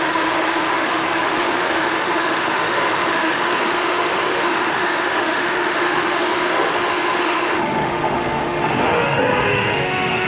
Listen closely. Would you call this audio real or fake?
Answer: fake